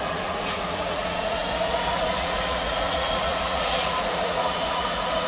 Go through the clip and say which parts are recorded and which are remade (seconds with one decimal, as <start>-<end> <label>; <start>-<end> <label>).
0.0-5.3 remade